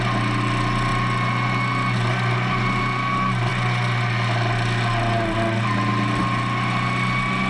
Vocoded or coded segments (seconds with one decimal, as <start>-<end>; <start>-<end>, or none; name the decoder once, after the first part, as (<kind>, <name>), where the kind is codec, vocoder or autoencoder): none